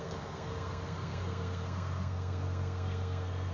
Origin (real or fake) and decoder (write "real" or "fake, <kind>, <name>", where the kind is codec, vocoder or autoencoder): fake, codec, SNAC